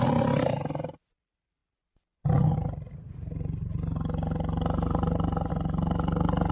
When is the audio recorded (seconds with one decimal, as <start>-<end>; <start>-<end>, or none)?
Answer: 0.0-6.5